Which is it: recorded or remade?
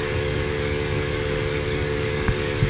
remade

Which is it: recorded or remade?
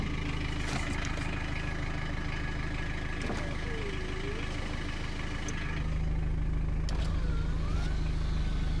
recorded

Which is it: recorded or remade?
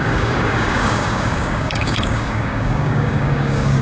remade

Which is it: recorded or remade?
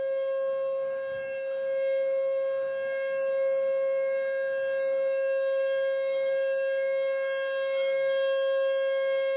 remade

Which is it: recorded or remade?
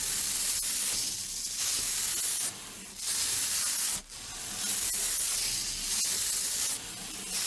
recorded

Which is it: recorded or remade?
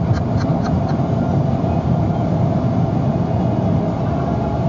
recorded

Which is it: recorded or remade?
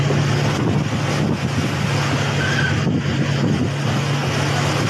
recorded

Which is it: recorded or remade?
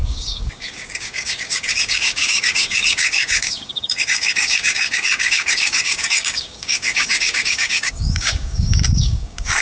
remade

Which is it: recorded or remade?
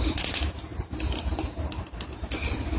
recorded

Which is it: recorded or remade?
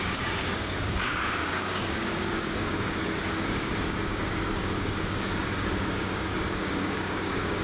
remade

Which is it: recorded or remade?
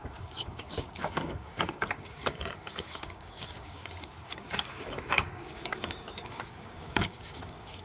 remade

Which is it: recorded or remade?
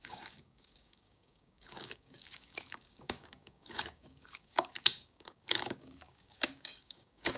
remade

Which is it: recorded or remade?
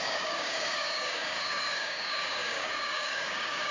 remade